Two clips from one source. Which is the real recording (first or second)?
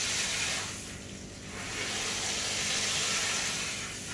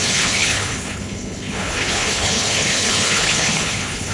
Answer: first